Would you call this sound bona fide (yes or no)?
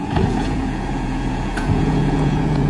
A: no